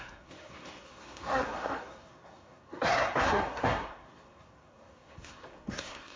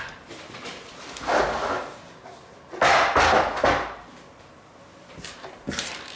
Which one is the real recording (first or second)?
second